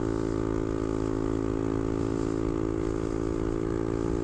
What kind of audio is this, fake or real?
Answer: real